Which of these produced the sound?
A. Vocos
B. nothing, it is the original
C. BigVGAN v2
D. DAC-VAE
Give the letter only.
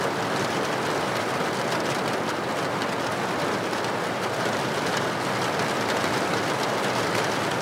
B